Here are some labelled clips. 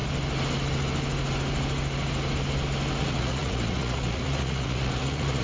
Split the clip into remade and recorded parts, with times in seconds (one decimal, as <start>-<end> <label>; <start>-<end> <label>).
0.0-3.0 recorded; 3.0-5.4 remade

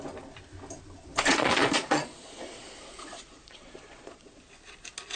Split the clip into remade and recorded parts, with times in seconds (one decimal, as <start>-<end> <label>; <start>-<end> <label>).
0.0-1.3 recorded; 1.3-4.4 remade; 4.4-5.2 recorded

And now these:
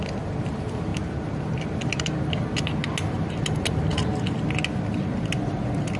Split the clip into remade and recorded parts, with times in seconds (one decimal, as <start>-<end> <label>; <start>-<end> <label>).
0.0-6.0 recorded

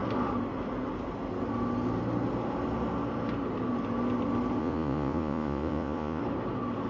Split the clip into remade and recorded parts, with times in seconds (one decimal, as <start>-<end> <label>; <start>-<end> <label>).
0.0-4.6 recorded; 4.6-6.2 remade; 6.2-6.9 recorded

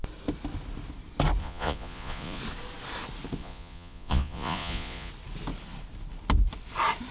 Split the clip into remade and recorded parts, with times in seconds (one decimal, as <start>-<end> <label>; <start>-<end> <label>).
0.0-1.4 recorded; 1.4-2.4 remade; 2.4-3.4 recorded; 3.4-5.1 remade; 5.1-7.1 recorded